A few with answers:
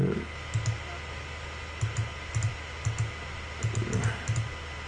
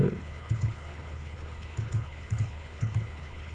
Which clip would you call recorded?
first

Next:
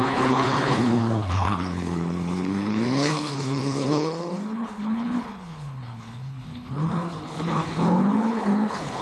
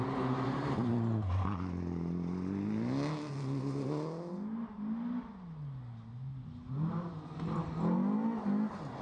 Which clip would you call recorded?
second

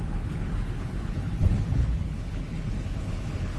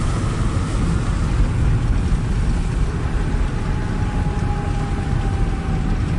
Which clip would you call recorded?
second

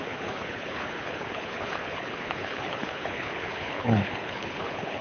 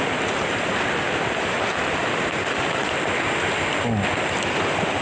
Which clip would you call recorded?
second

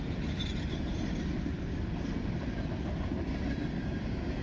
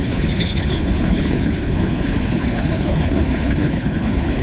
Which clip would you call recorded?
first